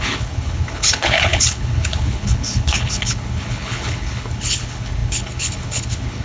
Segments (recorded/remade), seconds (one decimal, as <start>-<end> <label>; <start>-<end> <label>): 0.0-6.2 remade